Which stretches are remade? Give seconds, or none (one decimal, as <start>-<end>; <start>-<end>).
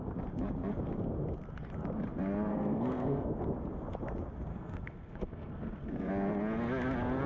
2.5-3.4; 4.5-6.1